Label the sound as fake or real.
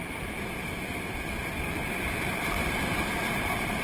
fake